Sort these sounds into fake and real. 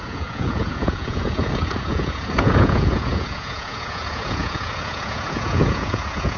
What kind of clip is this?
fake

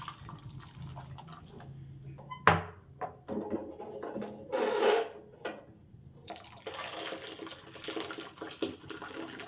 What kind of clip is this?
real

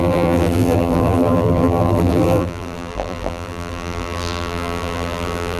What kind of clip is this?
fake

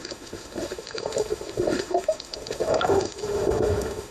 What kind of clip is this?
fake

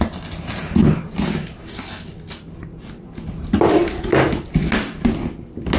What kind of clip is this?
real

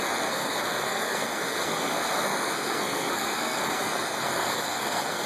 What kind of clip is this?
fake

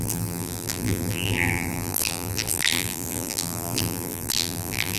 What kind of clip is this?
fake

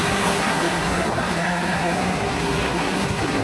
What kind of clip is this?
fake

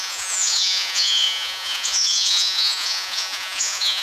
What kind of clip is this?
fake